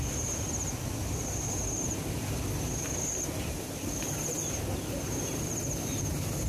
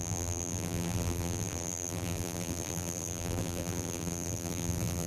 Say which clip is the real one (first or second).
first